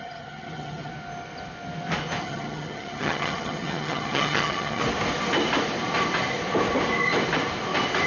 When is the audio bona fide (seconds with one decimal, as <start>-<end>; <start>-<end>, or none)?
0.9-2.2; 4.8-8.1